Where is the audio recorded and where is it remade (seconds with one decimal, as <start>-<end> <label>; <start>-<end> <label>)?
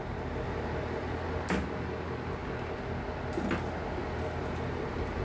0.0-1.1 remade; 1.1-4.0 recorded; 4.0-5.2 remade